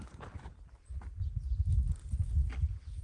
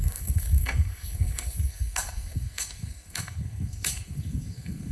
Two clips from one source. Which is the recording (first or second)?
first